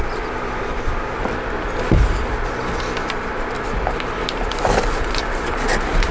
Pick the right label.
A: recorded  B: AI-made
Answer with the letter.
B